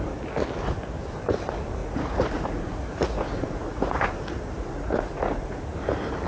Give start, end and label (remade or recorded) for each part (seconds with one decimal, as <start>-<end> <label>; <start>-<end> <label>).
0.0-1.8 recorded; 1.8-5.6 remade; 5.6-6.3 recorded